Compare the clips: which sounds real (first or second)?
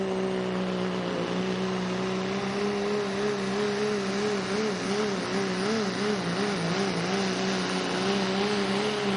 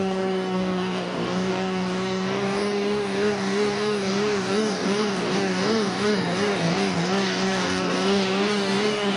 first